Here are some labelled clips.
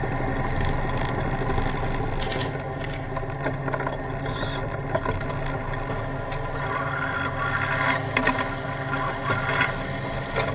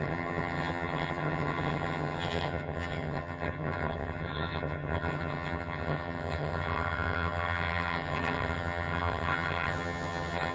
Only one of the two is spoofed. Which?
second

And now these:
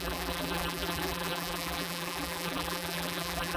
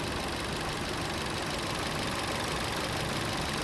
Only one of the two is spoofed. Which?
first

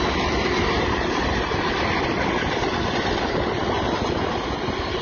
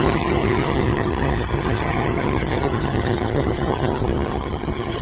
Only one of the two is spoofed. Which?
second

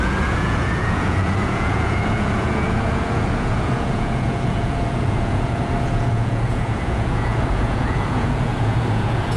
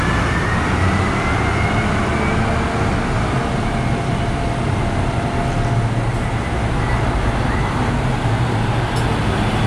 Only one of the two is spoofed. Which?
first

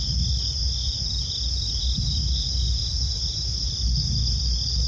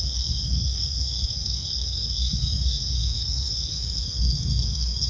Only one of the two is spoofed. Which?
second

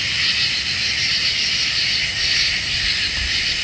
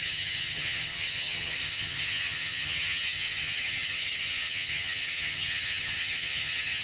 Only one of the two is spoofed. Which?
second